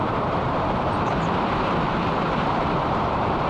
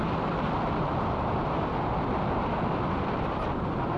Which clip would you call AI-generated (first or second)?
first